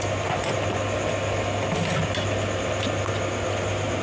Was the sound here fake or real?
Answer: real